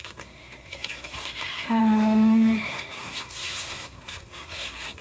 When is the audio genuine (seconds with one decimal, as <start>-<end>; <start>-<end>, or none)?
none

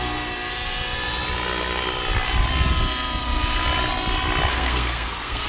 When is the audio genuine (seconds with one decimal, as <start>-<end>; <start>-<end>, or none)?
0.0-4.5

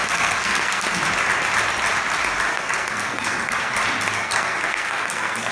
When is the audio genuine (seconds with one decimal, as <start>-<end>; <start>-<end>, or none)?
1.0-2.5; 3.7-4.2

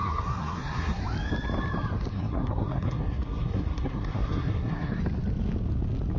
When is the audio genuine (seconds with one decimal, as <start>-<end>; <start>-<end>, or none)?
1.0-2.1; 5.0-6.2